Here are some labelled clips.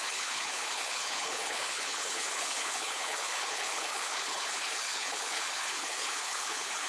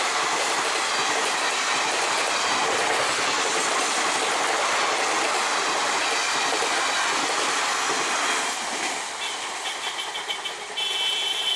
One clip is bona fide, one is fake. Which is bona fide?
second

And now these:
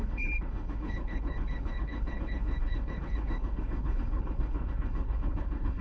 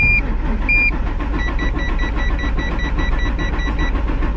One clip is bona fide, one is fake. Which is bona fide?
second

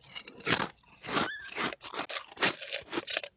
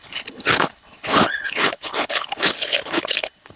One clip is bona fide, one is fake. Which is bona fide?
first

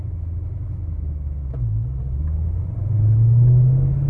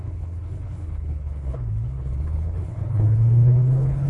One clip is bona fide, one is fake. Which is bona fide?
first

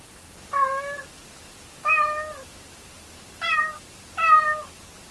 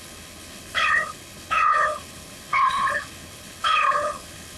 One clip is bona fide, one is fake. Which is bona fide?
first